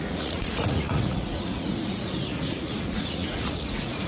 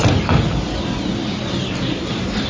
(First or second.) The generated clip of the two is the first